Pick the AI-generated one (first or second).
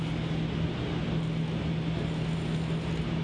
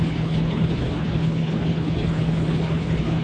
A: second